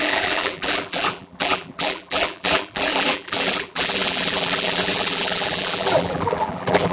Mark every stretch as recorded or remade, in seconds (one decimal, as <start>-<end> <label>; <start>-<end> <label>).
0.0-6.9 remade